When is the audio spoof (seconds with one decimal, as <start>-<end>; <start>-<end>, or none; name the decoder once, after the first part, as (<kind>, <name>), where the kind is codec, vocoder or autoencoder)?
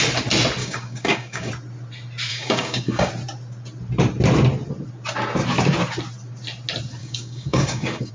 0.6-1.5 (codec, DAC); 2.3-3.1; 7.0-8.1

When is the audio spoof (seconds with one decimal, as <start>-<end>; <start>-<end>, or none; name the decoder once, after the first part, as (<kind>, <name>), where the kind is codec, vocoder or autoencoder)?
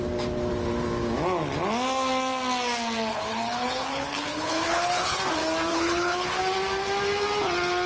3.1-5.2 (codec, HILCodec); 5.7-6.4